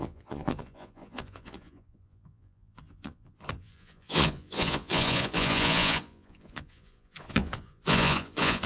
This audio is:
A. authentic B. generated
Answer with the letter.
B